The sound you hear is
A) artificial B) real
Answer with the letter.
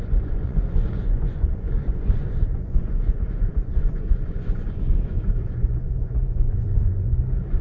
A